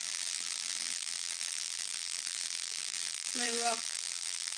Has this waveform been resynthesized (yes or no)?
yes